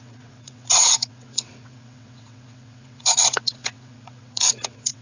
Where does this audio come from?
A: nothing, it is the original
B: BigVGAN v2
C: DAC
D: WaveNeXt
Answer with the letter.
D